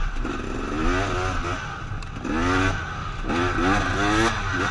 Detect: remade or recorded recorded